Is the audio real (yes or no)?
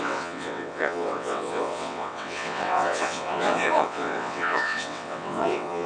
no